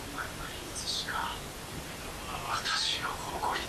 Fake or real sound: real